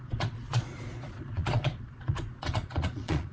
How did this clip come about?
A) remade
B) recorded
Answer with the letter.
A